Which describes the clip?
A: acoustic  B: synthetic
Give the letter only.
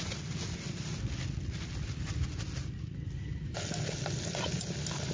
A